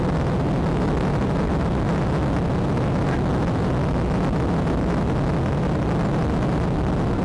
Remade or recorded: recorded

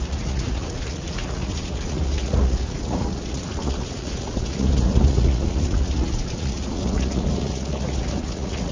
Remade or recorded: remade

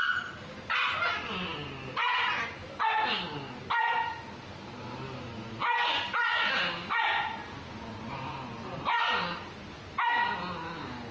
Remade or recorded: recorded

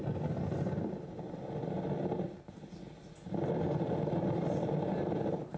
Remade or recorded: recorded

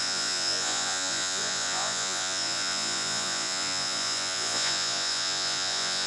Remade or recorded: remade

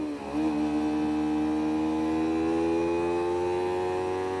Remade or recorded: recorded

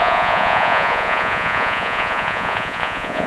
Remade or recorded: remade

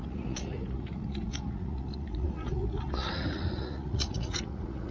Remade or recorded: remade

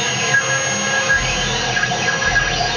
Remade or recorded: recorded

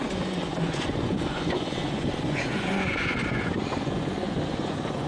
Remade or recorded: remade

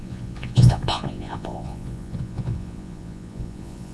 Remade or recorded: remade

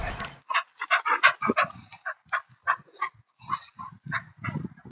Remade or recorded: recorded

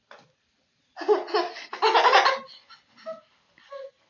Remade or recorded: recorded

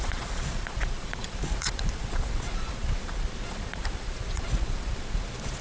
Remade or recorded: remade